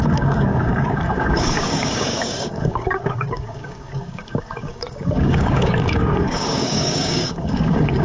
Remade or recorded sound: remade